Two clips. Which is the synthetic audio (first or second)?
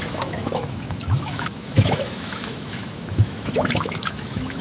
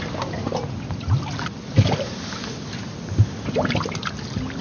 first